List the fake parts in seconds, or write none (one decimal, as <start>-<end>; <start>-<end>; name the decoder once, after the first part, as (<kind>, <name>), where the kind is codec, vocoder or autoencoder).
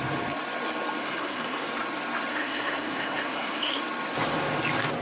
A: 1.0-1.7 (codec, SNAC); 2.3-3.8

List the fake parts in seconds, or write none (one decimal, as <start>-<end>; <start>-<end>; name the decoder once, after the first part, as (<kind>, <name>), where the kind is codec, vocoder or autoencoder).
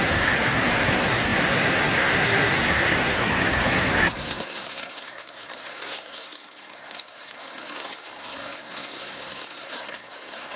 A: 0.0-10.6 (codec, SNAC)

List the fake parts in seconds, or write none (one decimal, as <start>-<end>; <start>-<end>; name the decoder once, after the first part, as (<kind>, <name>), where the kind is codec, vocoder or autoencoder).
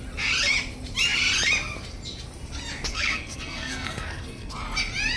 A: 2.9-4.5 (codec, SNAC)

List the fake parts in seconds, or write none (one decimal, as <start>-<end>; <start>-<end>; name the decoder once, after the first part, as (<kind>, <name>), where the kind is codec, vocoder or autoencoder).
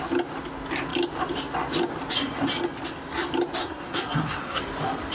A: 3.6-4.6 (codec, SNAC)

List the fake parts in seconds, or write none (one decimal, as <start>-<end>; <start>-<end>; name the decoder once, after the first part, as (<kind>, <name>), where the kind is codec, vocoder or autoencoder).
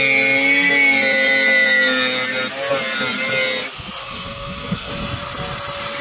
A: 4.0-4.9 (codec, SNAC)